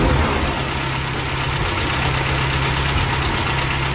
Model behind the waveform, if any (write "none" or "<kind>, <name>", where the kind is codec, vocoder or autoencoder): none